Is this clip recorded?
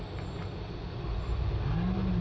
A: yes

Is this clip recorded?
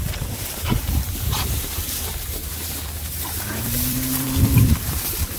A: no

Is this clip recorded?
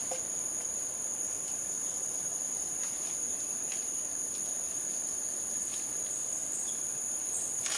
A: yes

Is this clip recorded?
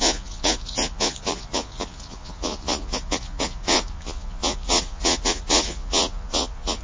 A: no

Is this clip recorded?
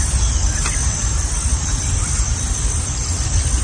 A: yes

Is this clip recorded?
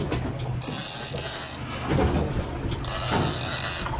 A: yes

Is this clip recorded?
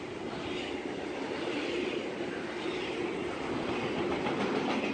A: yes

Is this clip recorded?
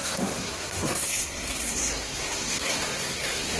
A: no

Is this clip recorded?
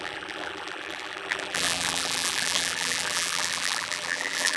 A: no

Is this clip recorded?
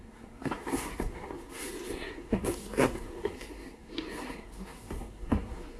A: no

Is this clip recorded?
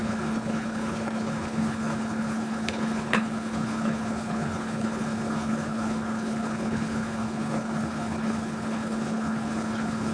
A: no